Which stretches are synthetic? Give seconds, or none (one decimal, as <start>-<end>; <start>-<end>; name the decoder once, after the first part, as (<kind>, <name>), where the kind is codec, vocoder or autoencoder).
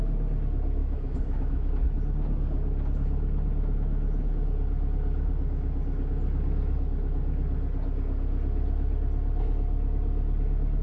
0.8-1.7 (autoencoder, DAC-VAE)